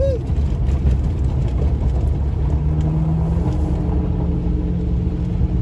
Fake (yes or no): no